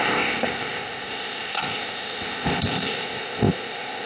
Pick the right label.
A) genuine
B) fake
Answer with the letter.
B